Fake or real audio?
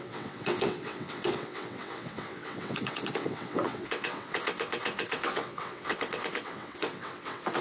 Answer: fake